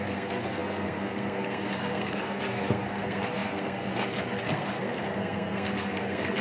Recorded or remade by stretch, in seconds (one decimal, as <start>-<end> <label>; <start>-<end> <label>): 0.0-6.4 remade